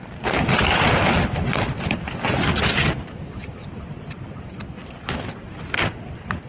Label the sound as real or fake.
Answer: real